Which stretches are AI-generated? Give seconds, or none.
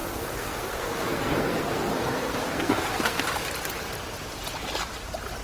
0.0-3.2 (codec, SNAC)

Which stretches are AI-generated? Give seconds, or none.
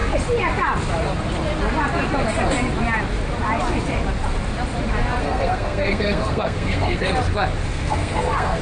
5.2-7.1 (codec, SNAC); 7.7-8.6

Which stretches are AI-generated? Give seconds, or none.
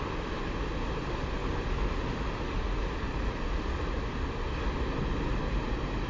none